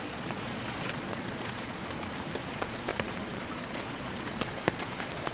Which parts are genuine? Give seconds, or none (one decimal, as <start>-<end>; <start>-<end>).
1.8-2.5

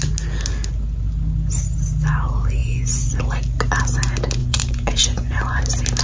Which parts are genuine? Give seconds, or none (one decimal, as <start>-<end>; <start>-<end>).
0.0-2.6; 3.2-4.4; 5.6-6.0